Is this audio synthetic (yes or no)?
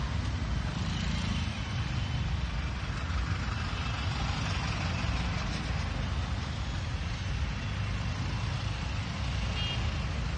no